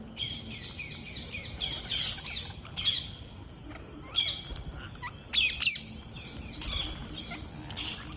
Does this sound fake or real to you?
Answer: real